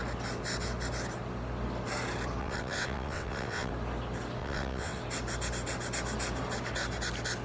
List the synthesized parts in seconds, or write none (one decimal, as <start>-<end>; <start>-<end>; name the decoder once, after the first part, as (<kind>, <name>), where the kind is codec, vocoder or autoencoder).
2.4-3.7 (vocoder, WaveNeXt); 4.4-5.0

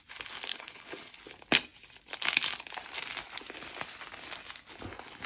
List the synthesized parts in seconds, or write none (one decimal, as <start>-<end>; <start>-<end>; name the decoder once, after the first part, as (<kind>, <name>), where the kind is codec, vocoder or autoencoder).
0.5-1.2 (codec, HILCodec)

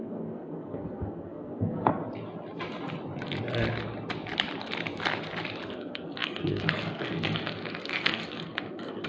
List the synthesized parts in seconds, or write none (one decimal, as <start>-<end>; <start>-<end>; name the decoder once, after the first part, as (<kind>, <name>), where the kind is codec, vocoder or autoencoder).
0.0-2.0 (codec, SNAC); 5.7-9.1

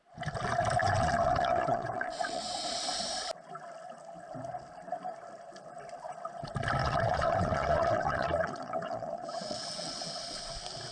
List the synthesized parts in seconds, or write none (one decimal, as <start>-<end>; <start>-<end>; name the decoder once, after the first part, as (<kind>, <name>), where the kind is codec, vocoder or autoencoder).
0.8-2.4 (vocoder, Vocos); 6.8-10.4

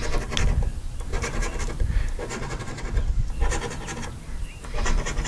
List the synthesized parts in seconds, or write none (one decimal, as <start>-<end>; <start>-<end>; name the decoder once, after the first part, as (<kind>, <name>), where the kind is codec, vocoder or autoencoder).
2.3-3.3 (vocoder, WaveNeXt)